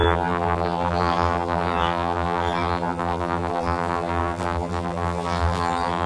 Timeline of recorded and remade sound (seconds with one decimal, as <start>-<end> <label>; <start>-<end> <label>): 0.0-6.1 remade